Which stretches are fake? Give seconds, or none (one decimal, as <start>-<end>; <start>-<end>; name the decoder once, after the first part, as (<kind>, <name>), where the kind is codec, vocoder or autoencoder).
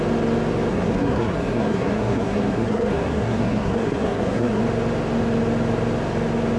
0.7-4.6 (codec, SNAC)